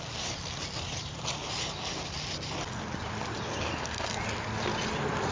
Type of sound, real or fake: real